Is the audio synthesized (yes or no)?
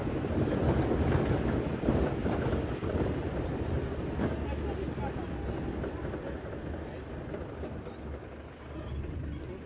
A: no